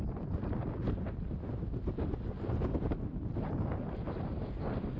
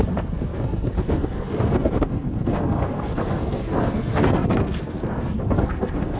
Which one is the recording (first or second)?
first